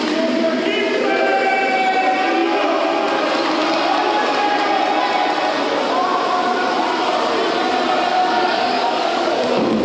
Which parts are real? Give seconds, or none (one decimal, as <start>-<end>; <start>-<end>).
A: 0.0-8.1

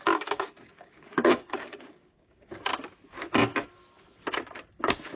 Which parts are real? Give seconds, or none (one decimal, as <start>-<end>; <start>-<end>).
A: 2.7-4.8